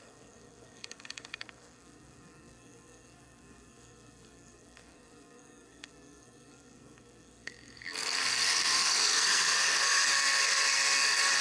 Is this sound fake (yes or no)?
yes